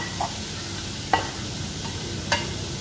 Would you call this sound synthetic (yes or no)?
no